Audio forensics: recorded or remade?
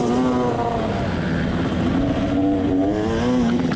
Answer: recorded